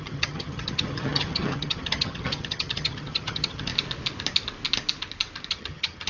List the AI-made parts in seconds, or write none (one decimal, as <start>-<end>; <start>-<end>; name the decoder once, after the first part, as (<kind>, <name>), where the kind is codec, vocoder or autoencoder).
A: 0.0-3.7 (vocoder, HiFi-GAN); 5.5-6.1

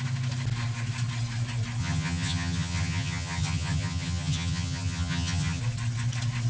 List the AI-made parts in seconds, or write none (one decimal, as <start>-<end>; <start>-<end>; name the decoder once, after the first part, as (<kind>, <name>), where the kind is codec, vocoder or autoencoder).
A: 1.8-5.6 (vocoder, HiFi-GAN)

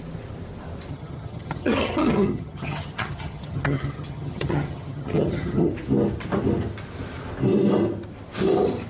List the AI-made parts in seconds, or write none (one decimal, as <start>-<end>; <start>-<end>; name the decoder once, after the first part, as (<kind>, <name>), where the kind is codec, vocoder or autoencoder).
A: 0.9-5.7 (vocoder, HiFi-GAN)

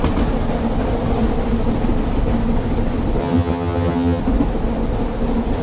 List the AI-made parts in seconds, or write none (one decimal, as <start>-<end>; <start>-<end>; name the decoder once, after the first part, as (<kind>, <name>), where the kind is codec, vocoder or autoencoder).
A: 3.2-4.2 (vocoder, HiFi-GAN)

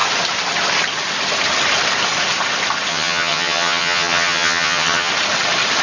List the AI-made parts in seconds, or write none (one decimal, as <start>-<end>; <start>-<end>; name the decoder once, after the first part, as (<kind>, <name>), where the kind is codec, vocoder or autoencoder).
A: 2.9-5.1 (vocoder, HiFi-GAN)

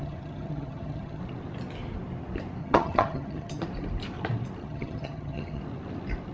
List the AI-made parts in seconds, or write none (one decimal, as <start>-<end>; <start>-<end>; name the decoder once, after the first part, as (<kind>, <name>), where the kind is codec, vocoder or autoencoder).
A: 0.0-1.2 (vocoder, HiFi-GAN); 2.6-3.6; 4.6-5.6

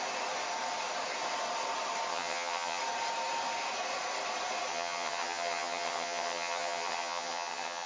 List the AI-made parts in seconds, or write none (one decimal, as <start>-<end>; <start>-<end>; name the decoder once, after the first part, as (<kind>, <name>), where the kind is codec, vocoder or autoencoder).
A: 2.1-2.8 (vocoder, HiFi-GAN); 4.7-7.9

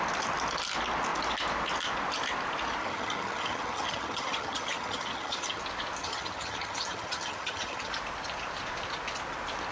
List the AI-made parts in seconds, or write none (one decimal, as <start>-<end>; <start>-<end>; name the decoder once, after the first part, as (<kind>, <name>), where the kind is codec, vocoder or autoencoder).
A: 2.8-5.6 (vocoder, HiFi-GAN); 6.0-7.9